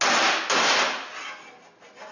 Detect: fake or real real